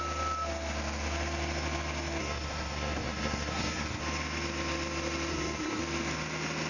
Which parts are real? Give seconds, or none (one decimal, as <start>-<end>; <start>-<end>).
0.0-2.2; 4.0-5.3; 5.8-6.7